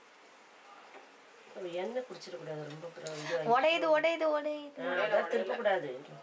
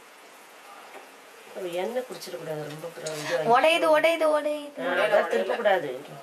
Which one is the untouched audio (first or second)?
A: first